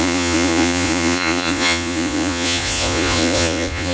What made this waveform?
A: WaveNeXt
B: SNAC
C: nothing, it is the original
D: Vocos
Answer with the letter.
D